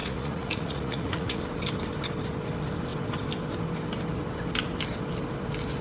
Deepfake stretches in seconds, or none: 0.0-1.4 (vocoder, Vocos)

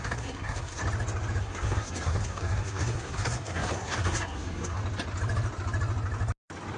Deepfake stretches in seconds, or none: 0.0-0.8 (codec, SNAC); 1.4-4.8

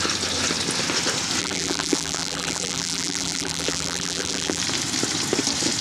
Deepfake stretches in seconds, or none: 1.4-4.6 (vocoder, BigVGAN v2)

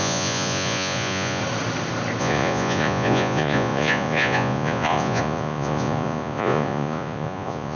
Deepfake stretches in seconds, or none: 0.0-1.4 (vocoder, Vocos); 2.2-7.8

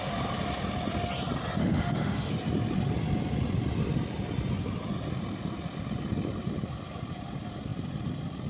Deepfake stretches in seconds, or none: 1.6-2.3 (autoencoder, DAC-VAE)